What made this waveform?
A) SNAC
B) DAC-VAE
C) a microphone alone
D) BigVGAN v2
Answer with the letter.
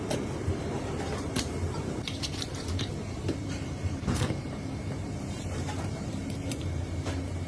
D